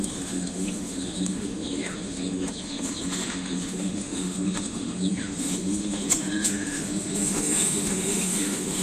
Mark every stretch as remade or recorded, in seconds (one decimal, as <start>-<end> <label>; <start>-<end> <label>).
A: 0.0-8.8 remade